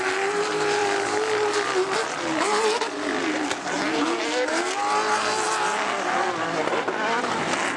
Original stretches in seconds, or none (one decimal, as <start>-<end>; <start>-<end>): 0.0-7.8